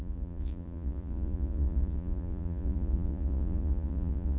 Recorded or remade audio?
remade